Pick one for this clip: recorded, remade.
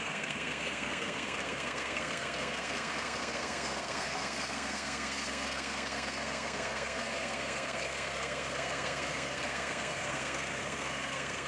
remade